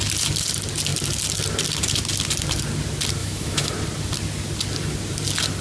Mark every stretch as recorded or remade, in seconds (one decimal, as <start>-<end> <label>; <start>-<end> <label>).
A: 0.0-3.2 recorded; 3.2-3.7 remade; 3.7-5.6 recorded